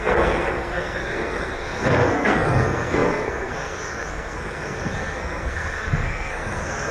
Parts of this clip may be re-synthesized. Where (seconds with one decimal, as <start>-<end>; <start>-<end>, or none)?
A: 0.0-6.9